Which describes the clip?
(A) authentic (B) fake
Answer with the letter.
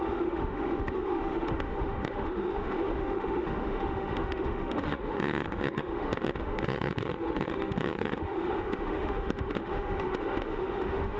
B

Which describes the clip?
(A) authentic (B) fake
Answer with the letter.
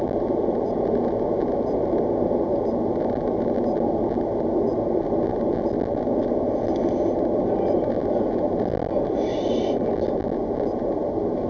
A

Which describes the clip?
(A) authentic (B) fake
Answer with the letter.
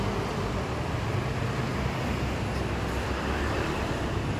A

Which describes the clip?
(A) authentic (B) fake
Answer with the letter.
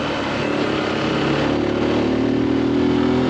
A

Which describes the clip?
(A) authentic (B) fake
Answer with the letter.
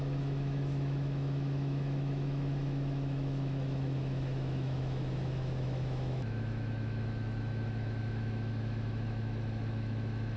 B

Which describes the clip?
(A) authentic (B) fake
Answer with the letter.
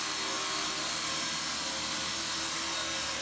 A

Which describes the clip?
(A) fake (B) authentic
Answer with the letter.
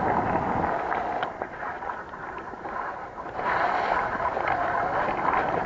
B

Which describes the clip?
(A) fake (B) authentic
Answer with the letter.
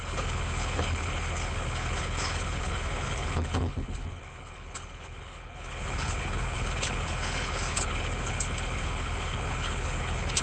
A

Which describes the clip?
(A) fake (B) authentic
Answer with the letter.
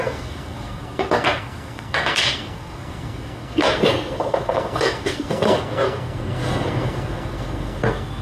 A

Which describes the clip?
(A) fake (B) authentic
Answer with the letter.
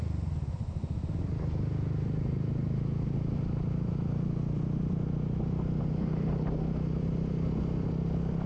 B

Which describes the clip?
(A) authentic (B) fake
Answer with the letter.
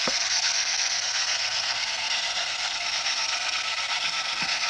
B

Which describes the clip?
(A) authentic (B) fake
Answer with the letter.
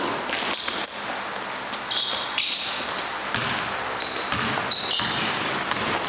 A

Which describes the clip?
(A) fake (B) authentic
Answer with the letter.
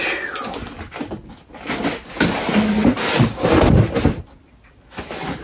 B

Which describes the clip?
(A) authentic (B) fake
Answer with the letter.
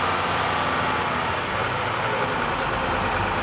A